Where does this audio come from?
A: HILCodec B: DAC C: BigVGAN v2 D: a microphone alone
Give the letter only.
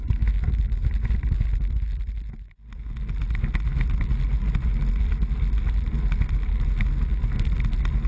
D